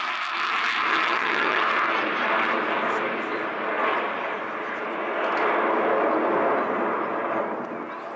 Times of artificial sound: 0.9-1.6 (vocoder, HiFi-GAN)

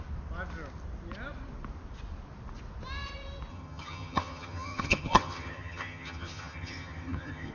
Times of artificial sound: 3.5-7.5 (vocoder, HiFi-GAN)

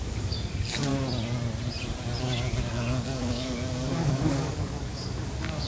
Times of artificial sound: 0.0-0.9 (codec, DAC); 2.2-5.7

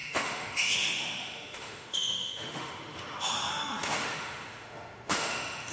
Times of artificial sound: 0.0-5.7 (autoencoder, DAC-VAE)

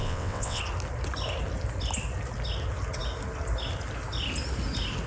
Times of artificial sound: 0.0-0.6 (vocoder, WaveNeXt)

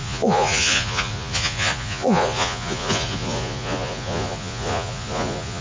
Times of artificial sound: 0.0-5.6 (vocoder, Vocos)